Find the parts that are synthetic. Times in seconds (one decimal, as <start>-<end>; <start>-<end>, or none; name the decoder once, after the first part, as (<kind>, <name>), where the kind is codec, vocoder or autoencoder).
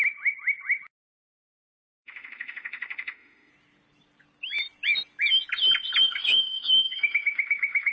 1.2-3.5 (autoencoder, DAC-VAE); 6.0-7.9